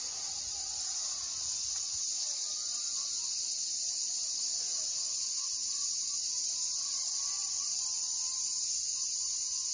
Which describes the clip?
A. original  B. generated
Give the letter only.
A